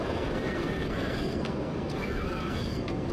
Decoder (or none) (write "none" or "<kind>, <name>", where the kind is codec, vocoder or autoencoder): codec, SNAC